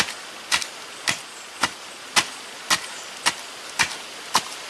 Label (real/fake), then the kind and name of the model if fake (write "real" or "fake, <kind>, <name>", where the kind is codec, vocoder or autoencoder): real